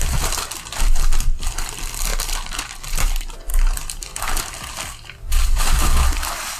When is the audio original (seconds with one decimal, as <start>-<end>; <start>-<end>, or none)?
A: 0.0-3.5; 4.4-6.6